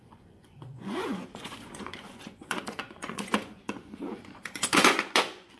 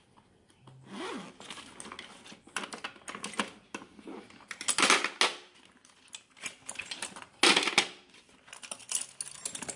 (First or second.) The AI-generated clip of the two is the first